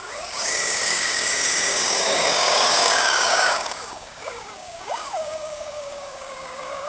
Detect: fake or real fake